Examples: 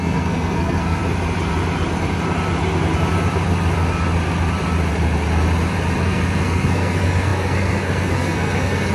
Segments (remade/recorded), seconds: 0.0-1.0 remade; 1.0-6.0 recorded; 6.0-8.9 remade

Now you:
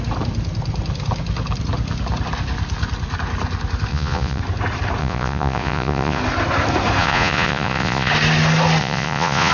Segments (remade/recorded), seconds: 0.0-3.9 recorded; 3.9-4.4 remade; 4.4-5.0 recorded; 5.0-6.2 remade; 6.2-7.0 recorded; 7.0-8.1 remade; 8.1-8.8 recorded; 8.8-9.5 remade

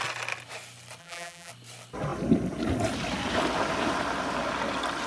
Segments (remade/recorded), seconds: 0.0-1.0 recorded; 1.0-1.5 remade; 1.5-5.1 recorded

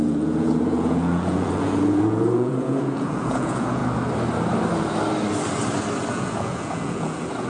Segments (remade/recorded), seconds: 0.0-3.8 remade; 3.8-6.1 recorded; 6.1-7.5 remade